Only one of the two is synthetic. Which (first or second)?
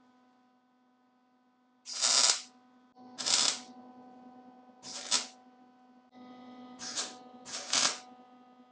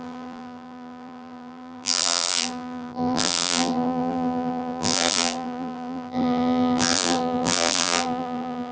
second